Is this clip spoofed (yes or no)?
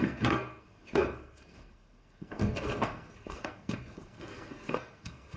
yes